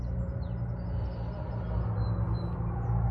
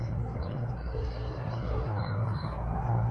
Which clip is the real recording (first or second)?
first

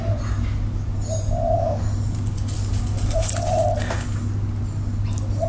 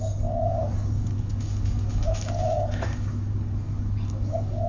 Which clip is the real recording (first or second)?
first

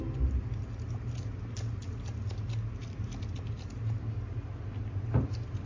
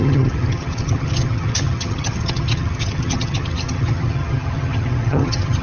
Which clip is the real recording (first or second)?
first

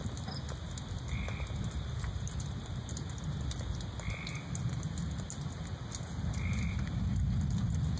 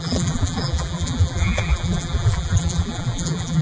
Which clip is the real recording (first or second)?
first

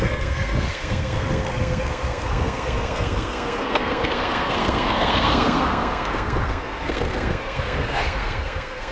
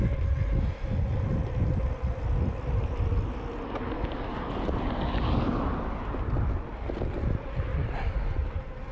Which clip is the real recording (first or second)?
second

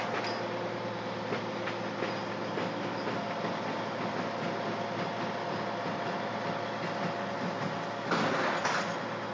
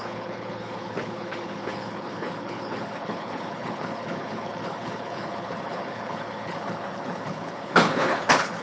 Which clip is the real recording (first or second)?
first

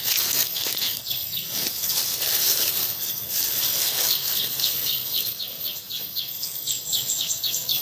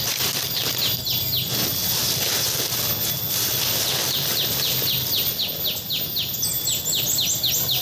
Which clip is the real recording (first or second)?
second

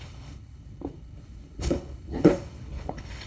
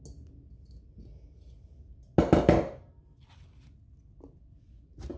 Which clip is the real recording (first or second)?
second